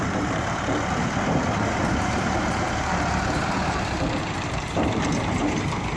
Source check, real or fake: fake